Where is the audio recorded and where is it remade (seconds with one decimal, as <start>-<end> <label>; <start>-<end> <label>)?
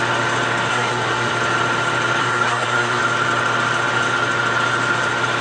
0.0-0.7 recorded; 0.7-1.3 remade; 1.3-2.2 recorded; 2.2-3.0 remade; 3.0-5.4 recorded